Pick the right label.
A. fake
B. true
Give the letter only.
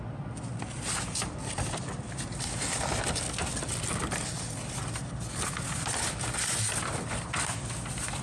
B